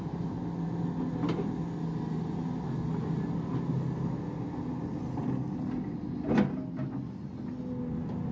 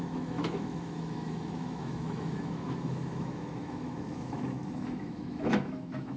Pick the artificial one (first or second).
second